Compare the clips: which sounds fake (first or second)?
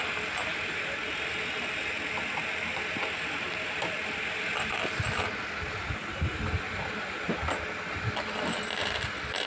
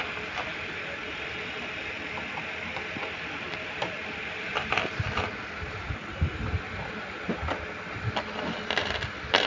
second